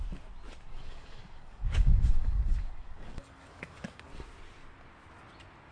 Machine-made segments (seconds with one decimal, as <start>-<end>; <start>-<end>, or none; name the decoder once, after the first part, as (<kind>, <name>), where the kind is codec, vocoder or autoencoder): 0.7-4.1 (codec, DAC)